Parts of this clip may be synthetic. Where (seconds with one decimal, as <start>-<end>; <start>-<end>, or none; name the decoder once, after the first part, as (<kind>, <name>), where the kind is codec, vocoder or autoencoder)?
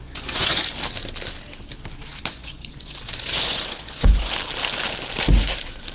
0.0-0.7 (vocoder, Vocos); 2.1-4.3